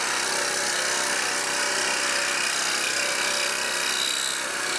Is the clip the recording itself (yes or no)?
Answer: yes